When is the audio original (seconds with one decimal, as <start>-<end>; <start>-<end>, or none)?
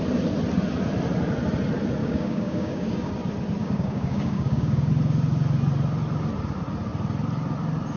0.0-2.0; 3.1-3.6; 4.9-8.0